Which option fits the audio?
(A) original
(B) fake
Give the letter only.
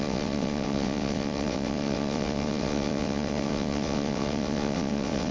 B